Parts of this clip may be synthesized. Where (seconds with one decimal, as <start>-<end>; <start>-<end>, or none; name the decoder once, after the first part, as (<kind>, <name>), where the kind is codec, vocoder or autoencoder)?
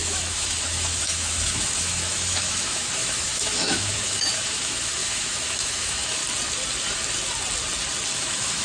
0.0-6.2 (autoencoder, DAC-VAE); 8.2-8.6